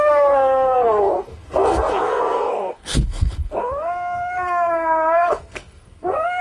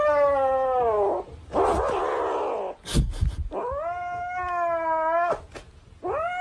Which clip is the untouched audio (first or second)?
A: second